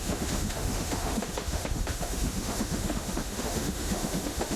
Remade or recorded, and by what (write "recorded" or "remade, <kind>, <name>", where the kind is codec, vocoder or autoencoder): remade, autoencoder, DAC-VAE